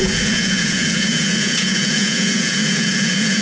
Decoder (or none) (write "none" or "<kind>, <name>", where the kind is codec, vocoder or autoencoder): vocoder, Vocos